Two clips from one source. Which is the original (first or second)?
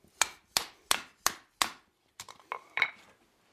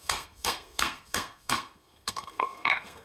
first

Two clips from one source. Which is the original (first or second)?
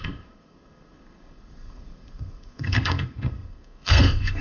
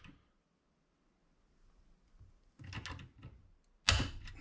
second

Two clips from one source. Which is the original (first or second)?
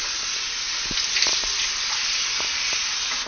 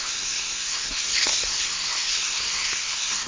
first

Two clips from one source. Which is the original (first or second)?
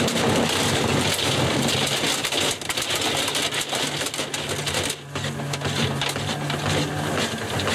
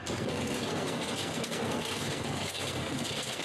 first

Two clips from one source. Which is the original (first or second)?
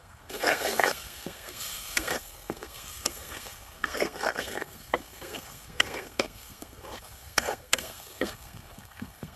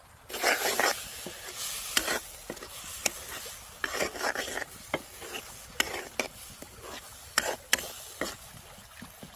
second